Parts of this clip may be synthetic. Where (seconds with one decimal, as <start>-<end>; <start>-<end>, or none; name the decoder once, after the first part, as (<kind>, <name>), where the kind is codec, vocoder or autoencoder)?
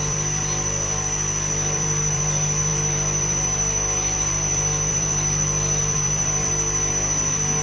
0.0-7.6 (vocoder, BigVGAN v2)